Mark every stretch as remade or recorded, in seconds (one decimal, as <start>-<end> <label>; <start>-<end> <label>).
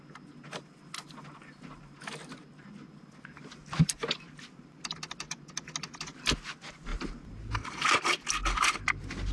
0.0-9.3 recorded